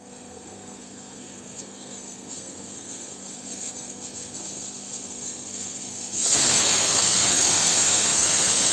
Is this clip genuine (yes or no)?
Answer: no